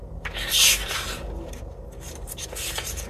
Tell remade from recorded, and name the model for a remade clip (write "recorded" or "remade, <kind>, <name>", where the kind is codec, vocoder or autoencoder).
remade, vocoder, BigVGAN v2